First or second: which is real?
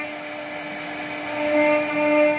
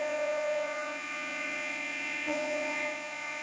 first